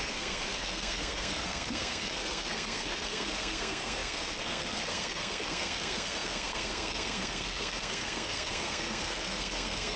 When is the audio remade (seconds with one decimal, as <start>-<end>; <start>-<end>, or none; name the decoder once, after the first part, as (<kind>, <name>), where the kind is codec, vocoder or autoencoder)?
0.0-10.0 (codec, SNAC)